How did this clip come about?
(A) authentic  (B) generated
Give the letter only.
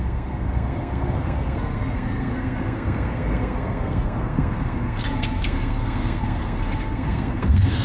B